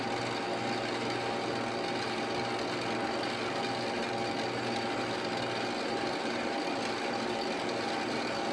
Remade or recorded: recorded